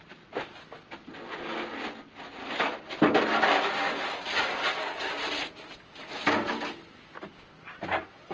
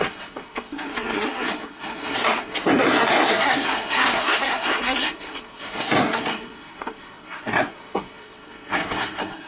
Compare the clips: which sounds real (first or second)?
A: first